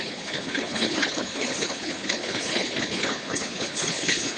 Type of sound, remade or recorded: remade